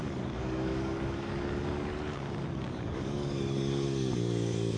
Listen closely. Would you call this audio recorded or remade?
remade